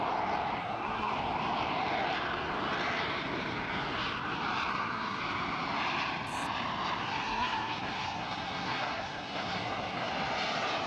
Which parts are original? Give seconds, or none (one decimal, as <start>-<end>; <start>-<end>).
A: 0.0-0.6; 1.1-4.7; 5.2-7.0; 10.1-10.9